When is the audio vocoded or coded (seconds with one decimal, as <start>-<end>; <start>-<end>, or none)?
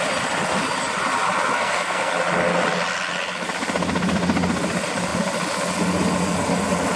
1.5-2.1